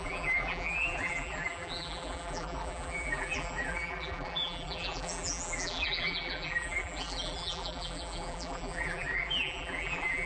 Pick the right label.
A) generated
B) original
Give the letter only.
A